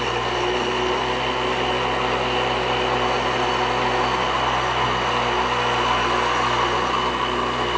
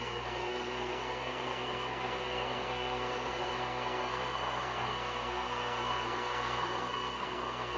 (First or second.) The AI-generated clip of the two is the second